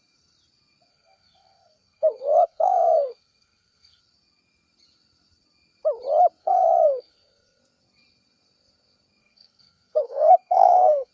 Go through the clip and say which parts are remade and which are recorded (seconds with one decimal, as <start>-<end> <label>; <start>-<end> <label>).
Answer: 0.0-0.9 recorded; 0.9-4.0 remade; 4.0-6.4 recorded; 6.4-7.6 remade; 7.6-9.2 recorded; 9.2-11.1 remade